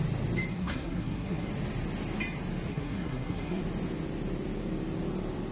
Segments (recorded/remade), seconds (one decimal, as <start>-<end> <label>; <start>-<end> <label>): 0.0-0.5 recorded; 0.5-1.5 remade; 1.5-2.7 recorded; 2.7-3.6 remade; 3.6-5.5 recorded